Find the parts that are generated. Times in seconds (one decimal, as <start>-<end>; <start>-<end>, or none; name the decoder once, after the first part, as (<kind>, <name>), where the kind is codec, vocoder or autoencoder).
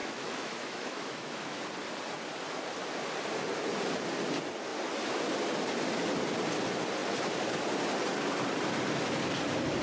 0.0-1.6 (autoencoder, DAC-VAE)